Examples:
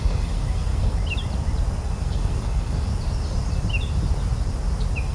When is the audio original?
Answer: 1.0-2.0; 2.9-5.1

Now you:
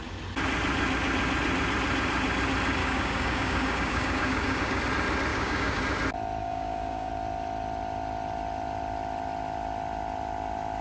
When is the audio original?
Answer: 0.0-2.8; 4.8-5.3; 5.8-6.4; 7.1-10.8

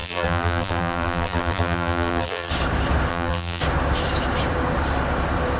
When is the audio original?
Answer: 2.5-3.1; 3.6-5.6

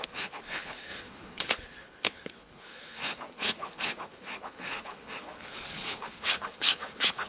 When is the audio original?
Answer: none

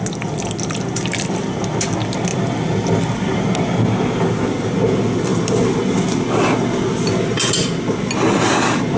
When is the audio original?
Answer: 0.0-2.3; 3.0-9.0

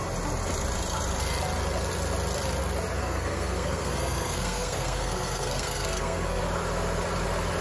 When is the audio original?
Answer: 0.0-3.0; 6.4-7.6

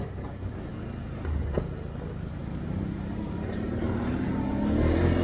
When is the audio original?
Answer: 0.0-2.4; 4.1-5.2

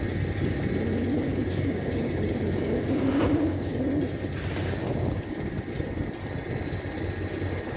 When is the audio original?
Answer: 0.0-1.1; 3.8-4.8; 5.6-7.8